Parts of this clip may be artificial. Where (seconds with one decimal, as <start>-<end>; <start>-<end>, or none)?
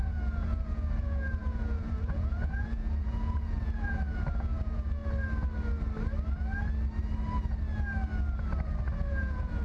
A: 0.0-5.0; 9.1-9.6